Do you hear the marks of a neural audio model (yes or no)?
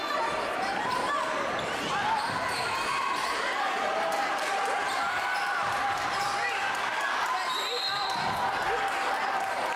yes